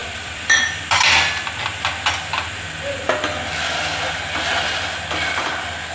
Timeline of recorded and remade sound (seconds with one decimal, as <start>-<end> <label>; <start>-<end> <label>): 0.0-0.6 remade; 0.6-5.9 recorded